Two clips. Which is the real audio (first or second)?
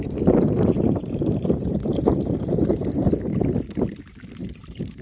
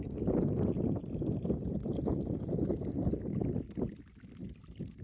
second